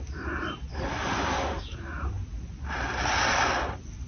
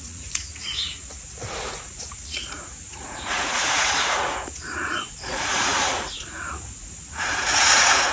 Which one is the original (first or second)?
first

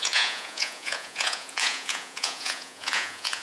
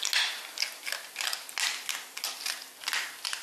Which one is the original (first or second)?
second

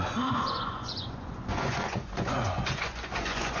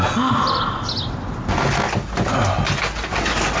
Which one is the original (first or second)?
second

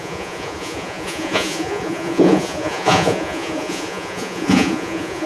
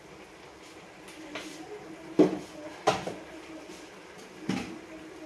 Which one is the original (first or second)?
second